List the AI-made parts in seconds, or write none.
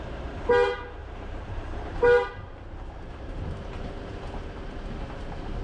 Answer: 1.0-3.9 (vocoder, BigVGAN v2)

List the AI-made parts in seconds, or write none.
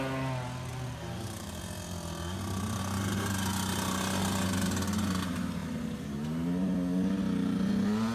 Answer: 0.7-1.6 (vocoder, BigVGAN v2); 5.6-6.1